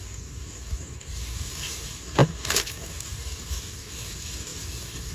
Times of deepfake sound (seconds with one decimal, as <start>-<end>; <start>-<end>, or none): 0.0-5.1